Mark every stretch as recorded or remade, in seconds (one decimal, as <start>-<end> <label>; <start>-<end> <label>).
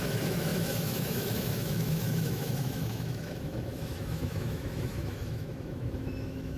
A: 0.0-6.6 remade